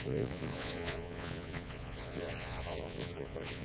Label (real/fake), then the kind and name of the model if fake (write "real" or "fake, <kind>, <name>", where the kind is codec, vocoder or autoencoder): fake, vocoder, Vocos